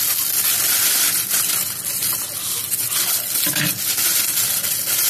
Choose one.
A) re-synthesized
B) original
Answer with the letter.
B